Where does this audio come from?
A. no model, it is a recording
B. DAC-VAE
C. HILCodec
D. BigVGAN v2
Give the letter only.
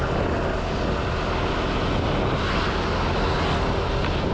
A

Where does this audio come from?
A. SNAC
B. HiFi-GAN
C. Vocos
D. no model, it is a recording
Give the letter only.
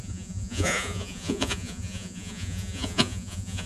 C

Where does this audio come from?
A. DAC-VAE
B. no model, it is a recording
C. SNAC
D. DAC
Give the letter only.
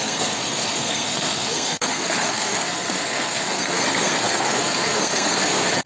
C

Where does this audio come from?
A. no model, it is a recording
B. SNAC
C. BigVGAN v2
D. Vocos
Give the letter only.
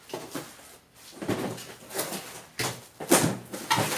A